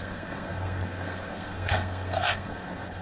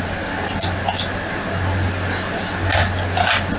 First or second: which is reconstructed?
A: first